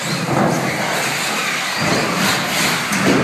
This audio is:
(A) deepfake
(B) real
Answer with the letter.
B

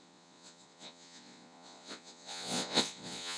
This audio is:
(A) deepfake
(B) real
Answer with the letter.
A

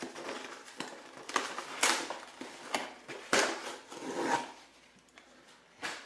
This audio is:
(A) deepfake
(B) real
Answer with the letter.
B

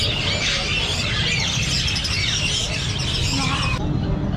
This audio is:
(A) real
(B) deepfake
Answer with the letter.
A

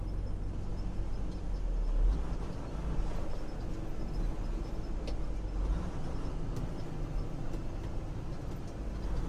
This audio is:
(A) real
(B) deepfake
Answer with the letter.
A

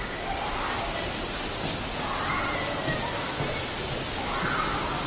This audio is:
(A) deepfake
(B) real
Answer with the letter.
B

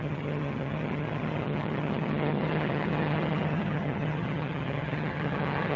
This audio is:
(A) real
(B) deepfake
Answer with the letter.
B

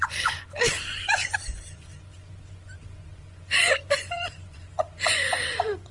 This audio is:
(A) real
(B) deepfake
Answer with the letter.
B